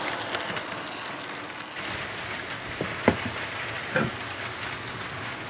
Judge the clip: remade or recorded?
recorded